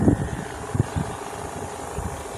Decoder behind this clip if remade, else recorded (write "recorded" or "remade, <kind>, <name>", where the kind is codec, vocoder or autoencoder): recorded